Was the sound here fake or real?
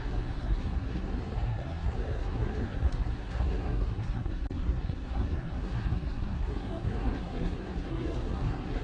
fake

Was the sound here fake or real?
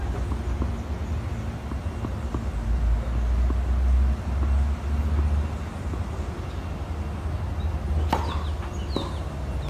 real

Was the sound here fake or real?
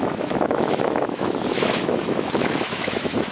fake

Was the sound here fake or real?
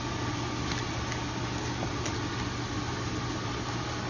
real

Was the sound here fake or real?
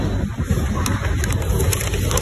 real